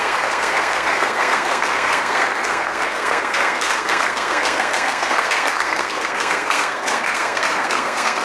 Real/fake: fake